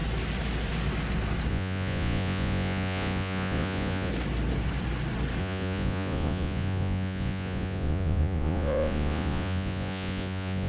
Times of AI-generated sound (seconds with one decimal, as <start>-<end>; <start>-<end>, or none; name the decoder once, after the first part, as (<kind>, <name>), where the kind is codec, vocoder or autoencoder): 1.5-4.1 (vocoder, Vocos); 5.4-10.7